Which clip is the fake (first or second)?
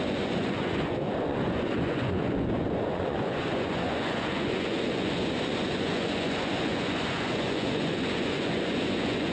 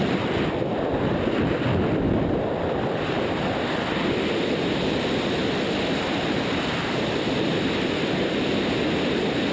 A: first